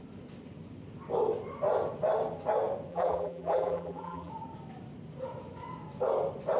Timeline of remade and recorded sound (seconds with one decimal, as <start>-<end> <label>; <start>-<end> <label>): 0.0-2.9 recorded; 2.9-4.3 remade; 4.3-6.6 recorded